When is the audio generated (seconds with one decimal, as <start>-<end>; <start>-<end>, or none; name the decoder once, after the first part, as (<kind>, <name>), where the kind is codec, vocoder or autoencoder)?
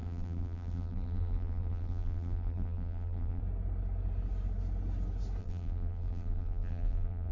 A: 0.0-3.4 (vocoder, BigVGAN v2); 5.4-7.3